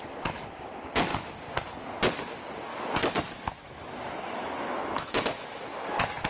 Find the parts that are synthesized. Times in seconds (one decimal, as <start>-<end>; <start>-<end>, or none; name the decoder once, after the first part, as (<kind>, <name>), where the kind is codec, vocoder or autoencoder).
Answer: 2.7-5.6 (autoencoder, DAC-VAE)